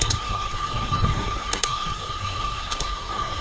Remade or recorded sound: remade